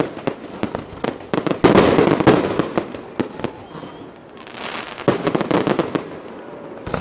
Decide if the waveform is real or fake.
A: real